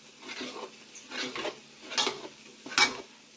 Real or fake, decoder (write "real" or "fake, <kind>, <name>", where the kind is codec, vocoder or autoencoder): real